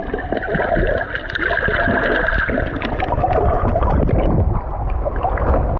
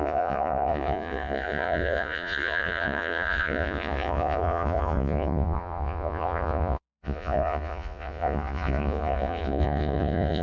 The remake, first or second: second